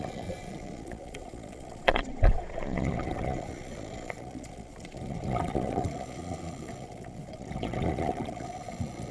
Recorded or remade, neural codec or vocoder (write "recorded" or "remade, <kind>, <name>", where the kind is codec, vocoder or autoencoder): remade, vocoder, Vocos